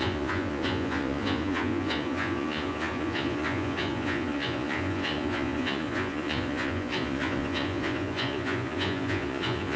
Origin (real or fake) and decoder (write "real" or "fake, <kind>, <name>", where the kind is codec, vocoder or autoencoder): fake, vocoder, Vocos